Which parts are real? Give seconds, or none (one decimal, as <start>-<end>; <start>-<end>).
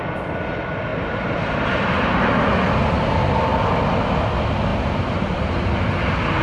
0.0-0.9; 2.4-4.7; 5.5-6.4